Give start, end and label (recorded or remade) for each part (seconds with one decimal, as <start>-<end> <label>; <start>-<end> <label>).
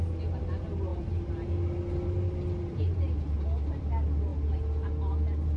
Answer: 0.0-5.6 recorded